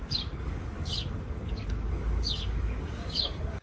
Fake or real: fake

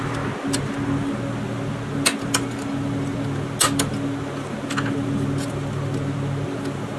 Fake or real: real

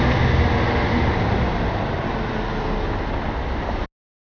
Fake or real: real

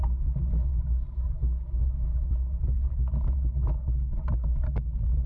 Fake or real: real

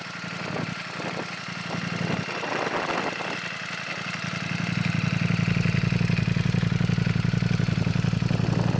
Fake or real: real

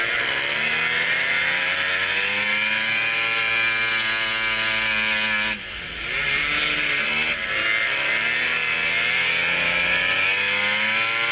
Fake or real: real